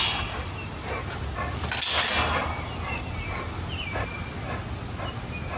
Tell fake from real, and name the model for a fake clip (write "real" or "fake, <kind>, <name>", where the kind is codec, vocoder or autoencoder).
real